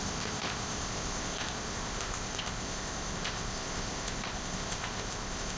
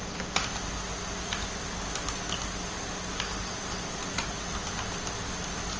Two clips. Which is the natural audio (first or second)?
second